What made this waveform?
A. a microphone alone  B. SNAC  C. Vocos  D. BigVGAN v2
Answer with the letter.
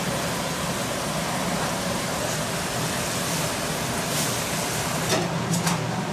D